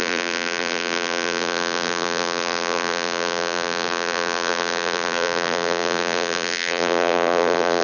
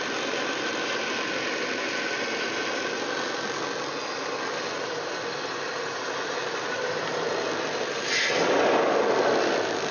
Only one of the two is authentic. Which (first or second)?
second